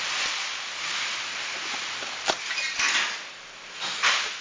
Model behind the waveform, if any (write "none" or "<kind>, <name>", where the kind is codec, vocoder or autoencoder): none